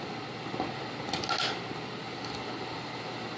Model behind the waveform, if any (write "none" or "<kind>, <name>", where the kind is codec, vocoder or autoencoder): none